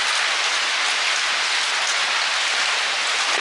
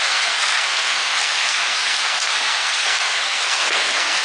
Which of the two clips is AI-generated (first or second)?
second